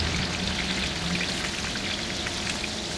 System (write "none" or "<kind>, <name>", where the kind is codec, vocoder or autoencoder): none